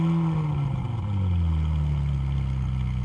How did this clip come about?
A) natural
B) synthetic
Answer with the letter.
A